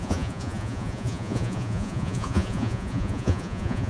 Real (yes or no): no